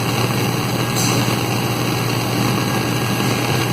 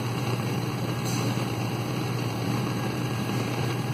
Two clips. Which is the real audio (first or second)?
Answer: first